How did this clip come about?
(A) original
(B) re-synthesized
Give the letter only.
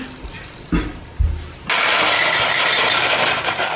A